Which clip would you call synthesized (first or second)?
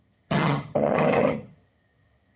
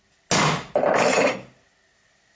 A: first